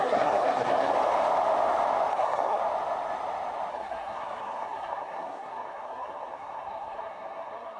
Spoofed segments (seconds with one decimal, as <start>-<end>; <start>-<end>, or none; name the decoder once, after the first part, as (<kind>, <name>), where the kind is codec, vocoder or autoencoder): 0.0-0.9 (codec, SNAC); 2.1-2.6; 3.7-7.8